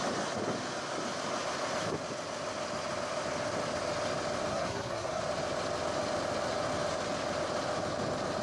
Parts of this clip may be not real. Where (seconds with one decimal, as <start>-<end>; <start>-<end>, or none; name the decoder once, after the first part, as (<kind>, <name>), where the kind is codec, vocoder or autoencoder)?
4.5-5.2 (codec, SNAC)